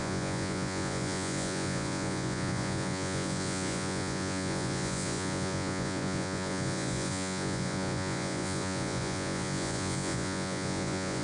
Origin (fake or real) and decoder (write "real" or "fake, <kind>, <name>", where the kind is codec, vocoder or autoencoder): fake, vocoder, Vocos